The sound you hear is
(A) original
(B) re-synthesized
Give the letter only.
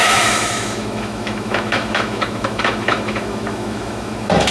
B